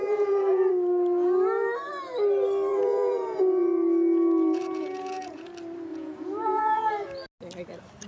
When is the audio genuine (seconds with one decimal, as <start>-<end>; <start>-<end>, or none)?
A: 0.7-2.7; 5.5-5.9; 6.9-8.1